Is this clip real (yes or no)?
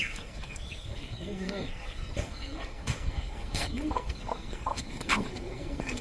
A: no